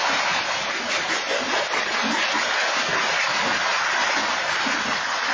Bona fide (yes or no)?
yes